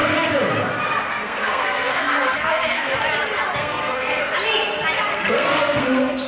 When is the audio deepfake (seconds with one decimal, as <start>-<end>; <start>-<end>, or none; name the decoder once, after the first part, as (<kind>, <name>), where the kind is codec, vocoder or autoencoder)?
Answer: 1.1-2.9 (codec, SNAC); 3.6-4.2; 5.1-6.3